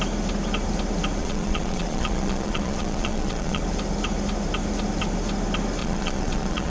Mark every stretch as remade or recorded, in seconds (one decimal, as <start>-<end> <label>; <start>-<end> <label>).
0.0-1.2 recorded; 1.2-3.6 remade; 3.6-5.8 recorded; 5.8-6.7 remade

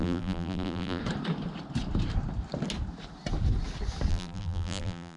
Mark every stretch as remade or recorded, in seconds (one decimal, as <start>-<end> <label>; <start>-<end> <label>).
0.0-1.0 remade; 1.0-4.1 recorded; 4.1-5.2 remade

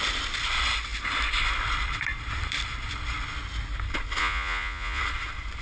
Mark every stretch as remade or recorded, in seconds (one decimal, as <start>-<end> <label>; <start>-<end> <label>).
0.0-4.2 recorded; 4.2-5.0 remade; 5.0-5.6 recorded

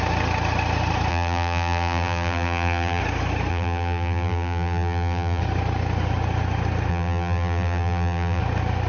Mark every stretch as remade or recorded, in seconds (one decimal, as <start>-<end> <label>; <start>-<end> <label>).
0.0-1.1 recorded; 1.1-3.0 remade; 3.0-3.5 recorded; 3.5-5.4 remade; 5.4-6.9 recorded; 6.9-8.4 remade; 8.4-8.9 recorded

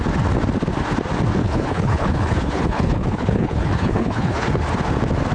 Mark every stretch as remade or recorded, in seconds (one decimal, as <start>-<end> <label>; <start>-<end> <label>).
0.0-1.4 recorded; 1.4-4.5 remade; 4.5-5.3 recorded

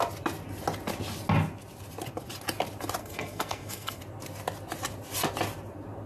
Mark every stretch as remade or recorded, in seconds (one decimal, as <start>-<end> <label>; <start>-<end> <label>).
0.0-3.0 recorded; 3.0-4.0 remade; 4.0-6.1 recorded

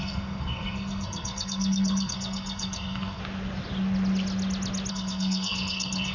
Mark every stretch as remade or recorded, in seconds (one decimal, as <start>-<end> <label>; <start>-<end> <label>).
0.0-3.2 remade; 3.2-4.9 recorded; 4.9-6.1 remade